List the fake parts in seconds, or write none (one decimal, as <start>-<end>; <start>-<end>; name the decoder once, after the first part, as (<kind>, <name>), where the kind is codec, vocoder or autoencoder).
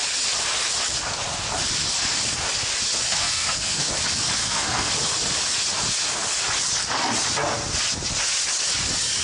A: 3.1-3.9 (codec, SNAC); 4.4-4.9